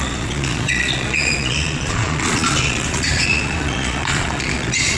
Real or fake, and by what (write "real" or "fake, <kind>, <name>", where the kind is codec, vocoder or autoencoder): fake, vocoder, Vocos